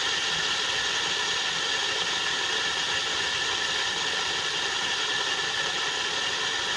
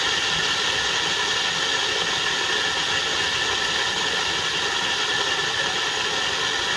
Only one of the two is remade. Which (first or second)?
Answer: first